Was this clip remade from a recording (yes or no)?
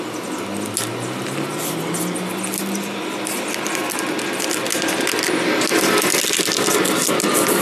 no